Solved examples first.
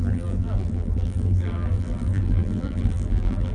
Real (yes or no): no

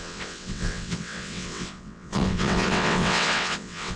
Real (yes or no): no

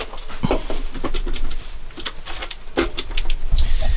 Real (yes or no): yes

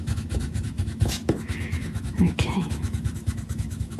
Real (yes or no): no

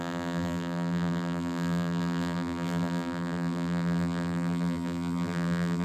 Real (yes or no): no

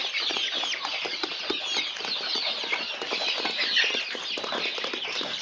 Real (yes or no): yes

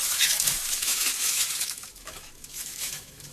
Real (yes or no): no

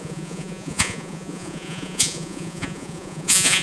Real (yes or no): no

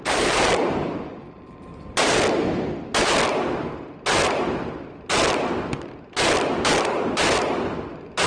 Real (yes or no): yes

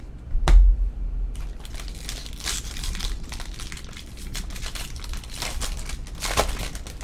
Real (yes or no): yes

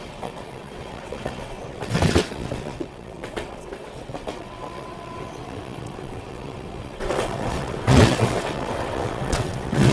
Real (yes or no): no